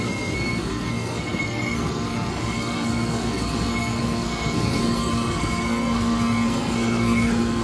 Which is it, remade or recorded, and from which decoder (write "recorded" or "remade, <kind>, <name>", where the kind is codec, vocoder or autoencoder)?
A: remade, codec, SNAC